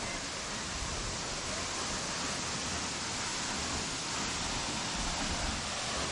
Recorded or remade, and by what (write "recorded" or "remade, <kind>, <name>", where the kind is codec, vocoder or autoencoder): recorded